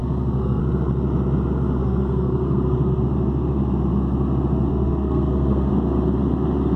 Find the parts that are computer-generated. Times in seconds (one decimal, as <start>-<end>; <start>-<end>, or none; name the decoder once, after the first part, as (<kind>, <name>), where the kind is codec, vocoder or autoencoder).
0.0-0.6 (codec, SNAC); 1.8-3.0; 4.7-5.7